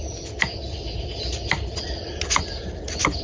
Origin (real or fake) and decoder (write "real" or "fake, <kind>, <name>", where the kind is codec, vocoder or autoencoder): real